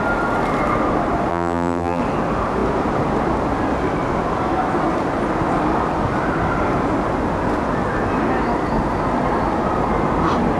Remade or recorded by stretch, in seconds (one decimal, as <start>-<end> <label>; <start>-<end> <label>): 0.0-1.3 recorded; 1.3-2.0 remade; 2.0-10.6 recorded